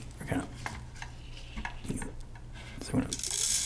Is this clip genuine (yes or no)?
yes